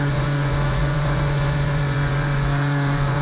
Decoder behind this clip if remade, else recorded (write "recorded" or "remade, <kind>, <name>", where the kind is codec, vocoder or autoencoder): remade, vocoder, Vocos